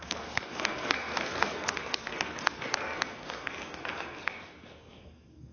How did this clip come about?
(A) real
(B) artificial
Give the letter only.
B